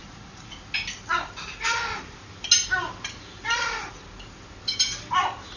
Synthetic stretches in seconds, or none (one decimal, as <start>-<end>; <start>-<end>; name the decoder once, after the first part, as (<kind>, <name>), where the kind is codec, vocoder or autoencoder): none